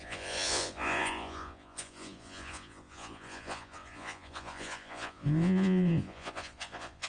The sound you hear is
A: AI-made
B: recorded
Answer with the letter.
A